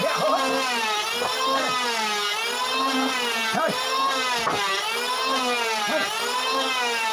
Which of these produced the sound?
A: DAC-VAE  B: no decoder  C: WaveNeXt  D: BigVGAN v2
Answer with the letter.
B